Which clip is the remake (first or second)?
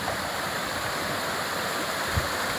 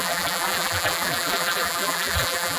second